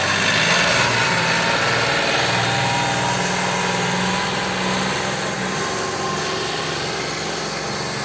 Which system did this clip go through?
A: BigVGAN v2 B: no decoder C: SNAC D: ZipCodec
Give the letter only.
B